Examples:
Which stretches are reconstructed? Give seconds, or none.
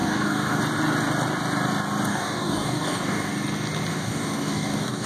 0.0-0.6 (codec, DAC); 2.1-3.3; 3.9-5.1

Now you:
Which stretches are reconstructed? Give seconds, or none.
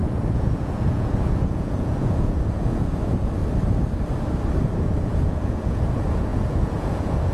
0.0-3.4 (vocoder, Vocos); 5.0-7.3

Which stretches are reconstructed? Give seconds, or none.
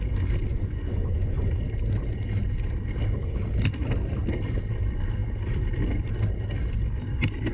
0.5-1.5 (vocoder, Vocos)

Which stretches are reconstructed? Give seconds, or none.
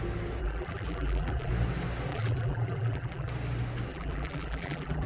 0.4-1.5 (vocoder, BigVGAN v2); 2.1-3.3; 3.9-5.1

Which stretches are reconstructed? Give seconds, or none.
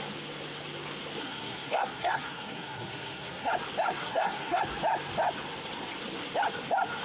1.2-3.5 (codec, SNAC); 4.0-4.6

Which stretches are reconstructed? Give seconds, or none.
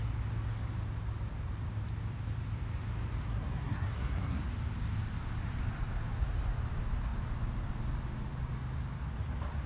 3.2-4.4 (codec, SNAC)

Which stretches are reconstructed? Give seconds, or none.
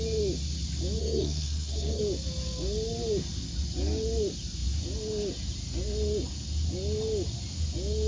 1.0-2.0 (codec, SNAC)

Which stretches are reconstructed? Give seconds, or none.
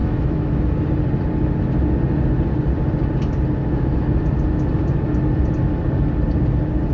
0.0-0.6 (autoencoder, DAC-VAE); 3.6-4.2